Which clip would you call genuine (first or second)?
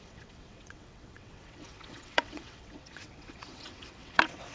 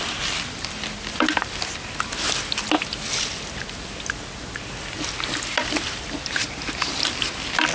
second